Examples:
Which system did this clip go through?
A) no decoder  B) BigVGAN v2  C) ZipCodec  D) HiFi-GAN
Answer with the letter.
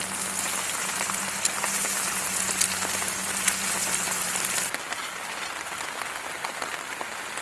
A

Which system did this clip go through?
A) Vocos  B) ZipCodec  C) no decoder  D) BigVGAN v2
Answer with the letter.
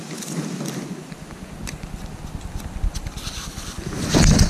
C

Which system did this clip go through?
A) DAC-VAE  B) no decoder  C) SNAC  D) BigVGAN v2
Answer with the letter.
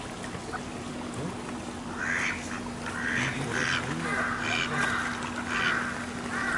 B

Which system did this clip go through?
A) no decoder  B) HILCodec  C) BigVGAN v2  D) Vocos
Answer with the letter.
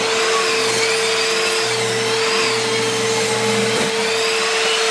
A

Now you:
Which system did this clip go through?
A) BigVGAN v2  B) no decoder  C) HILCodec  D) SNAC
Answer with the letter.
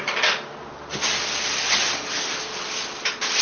B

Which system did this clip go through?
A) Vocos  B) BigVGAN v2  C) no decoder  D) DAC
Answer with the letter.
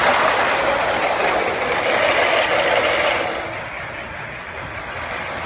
C